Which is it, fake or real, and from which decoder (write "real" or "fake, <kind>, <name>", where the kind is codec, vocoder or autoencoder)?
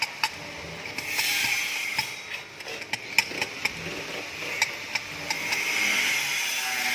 real